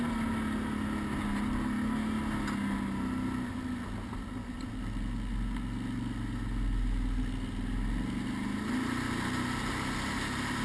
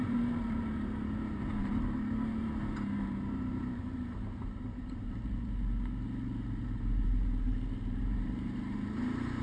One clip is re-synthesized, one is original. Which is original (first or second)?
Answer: first